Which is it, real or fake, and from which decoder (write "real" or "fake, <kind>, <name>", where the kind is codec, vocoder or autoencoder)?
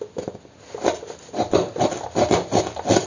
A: real